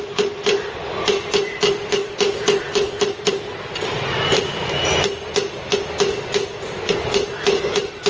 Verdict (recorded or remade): recorded